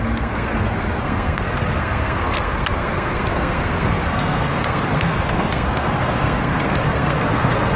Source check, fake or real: fake